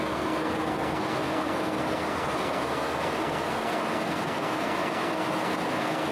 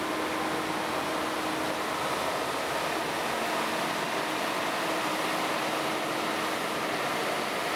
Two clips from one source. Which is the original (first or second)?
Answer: second